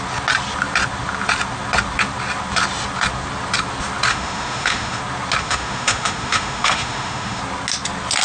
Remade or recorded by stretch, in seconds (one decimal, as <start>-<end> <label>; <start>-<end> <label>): 0.0-4.1 recorded; 4.1-5.0 remade; 5.0-5.4 recorded; 5.4-7.4 remade; 7.4-8.2 recorded

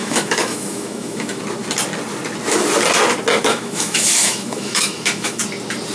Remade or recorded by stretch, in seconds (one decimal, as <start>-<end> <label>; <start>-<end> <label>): 0.0-1.4 remade; 1.4-3.5 recorded; 3.5-5.4 remade; 5.4-5.9 recorded

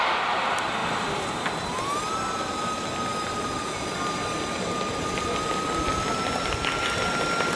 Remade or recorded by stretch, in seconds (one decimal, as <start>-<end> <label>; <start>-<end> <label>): 0.0-7.6 recorded

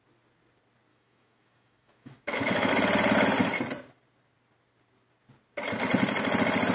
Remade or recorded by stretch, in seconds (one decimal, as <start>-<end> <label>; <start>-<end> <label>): 0.0-0.9 recorded; 0.9-2.7 remade; 2.7-6.7 recorded